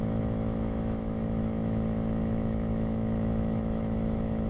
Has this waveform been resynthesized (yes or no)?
yes